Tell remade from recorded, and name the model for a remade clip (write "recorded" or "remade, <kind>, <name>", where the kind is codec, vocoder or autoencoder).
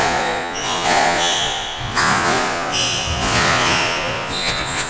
remade, vocoder, Vocos